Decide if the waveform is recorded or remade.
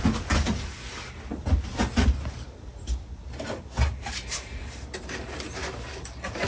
recorded